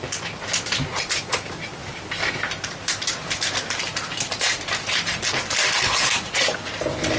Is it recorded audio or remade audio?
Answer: recorded